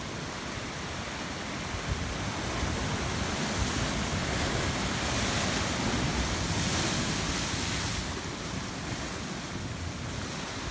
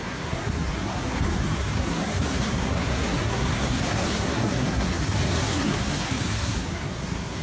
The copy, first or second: second